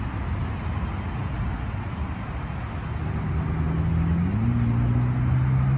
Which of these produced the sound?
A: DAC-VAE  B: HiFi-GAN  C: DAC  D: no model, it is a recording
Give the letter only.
D